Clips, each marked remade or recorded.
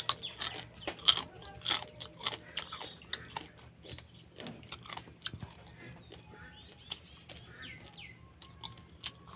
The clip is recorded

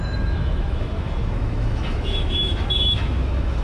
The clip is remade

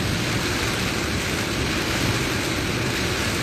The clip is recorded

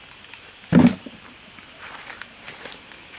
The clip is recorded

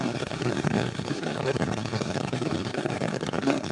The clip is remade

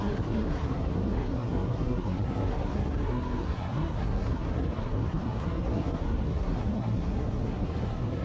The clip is remade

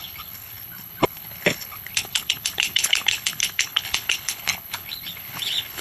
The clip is remade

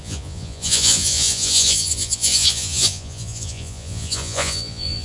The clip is remade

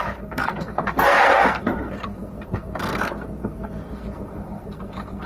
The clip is remade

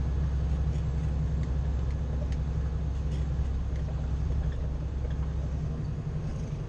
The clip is recorded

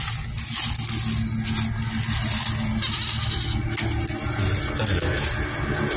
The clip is recorded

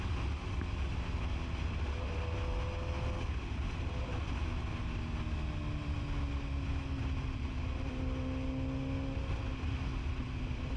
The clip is recorded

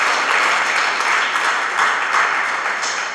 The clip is recorded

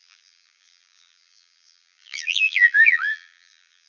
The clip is remade